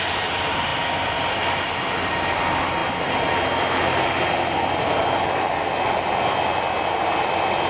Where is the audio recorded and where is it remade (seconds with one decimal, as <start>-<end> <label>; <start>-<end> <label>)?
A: 0.0-7.7 recorded

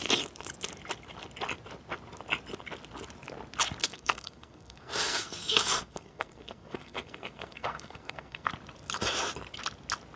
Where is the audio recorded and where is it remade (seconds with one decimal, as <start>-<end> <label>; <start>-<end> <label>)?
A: 0.0-3.8 recorded; 3.8-8.5 remade; 8.5-10.2 recorded

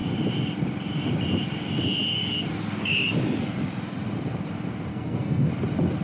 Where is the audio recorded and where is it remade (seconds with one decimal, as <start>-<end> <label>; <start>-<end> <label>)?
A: 0.0-4.9 recorded; 4.9-5.5 remade; 5.5-6.0 recorded

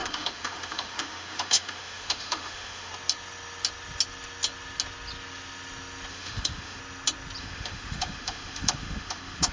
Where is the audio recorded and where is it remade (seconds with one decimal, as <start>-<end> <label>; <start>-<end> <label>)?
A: 0.0-2.9 remade; 2.9-6.1 recorded; 6.1-6.8 remade; 6.8-7.4 recorded; 7.4-9.5 remade

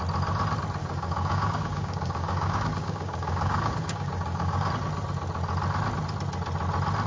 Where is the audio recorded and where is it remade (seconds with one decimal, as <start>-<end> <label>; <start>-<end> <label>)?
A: 0.0-0.8 recorded; 0.8-4.7 remade; 4.7-7.1 recorded

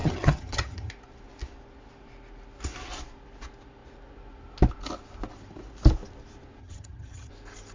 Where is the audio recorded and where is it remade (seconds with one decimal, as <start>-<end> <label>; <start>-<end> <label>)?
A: 0.0-0.9 remade; 0.9-6.6 recorded; 6.6-7.3 remade; 7.3-7.7 recorded

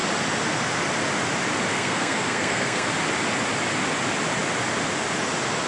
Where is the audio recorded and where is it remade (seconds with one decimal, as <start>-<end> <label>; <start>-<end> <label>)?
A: 0.0-1.7 recorded; 1.7-2.9 remade; 2.9-5.7 recorded